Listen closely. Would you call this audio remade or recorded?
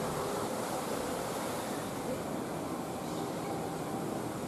recorded